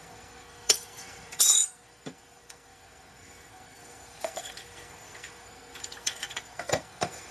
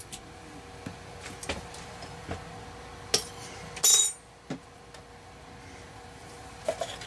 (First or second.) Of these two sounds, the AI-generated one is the first